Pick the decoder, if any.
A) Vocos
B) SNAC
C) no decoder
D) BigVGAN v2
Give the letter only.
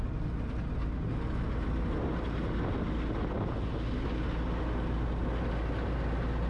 C